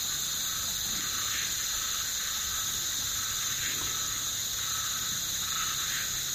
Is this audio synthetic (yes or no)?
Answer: no